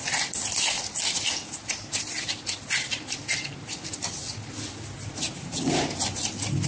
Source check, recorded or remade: recorded